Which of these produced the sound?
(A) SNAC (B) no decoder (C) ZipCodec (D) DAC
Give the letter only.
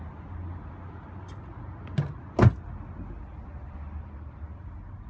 B